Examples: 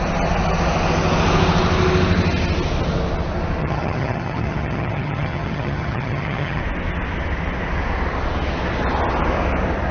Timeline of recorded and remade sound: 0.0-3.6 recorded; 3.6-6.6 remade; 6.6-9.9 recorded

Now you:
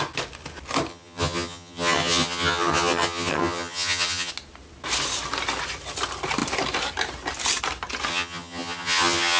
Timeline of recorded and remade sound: 0.0-0.9 recorded; 0.9-4.3 remade; 4.3-8.1 recorded; 8.1-9.4 remade

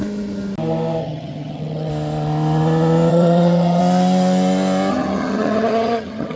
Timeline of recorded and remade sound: 0.0-1.0 recorded; 1.0-1.9 remade; 1.9-3.1 recorded; 3.1-3.8 remade; 3.8-4.9 recorded; 4.9-6.4 remade

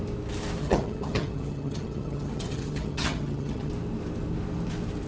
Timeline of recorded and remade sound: 0.0-0.6 recorded; 0.6-3.7 remade; 3.7-5.1 recorded

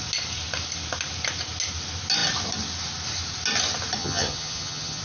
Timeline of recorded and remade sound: 0.0-4.0 recorded; 4.0-5.0 remade

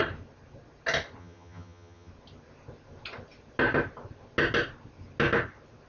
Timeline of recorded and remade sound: 0.0-1.2 recorded; 1.2-2.1 remade; 2.1-5.9 recorded